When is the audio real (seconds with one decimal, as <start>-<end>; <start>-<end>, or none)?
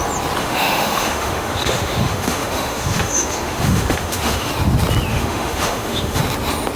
0.0-0.4; 4.5-5.1; 6.2-6.8